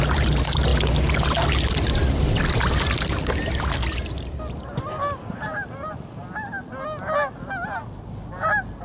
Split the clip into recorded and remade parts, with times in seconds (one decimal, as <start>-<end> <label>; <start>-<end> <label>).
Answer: 0.0-8.8 recorded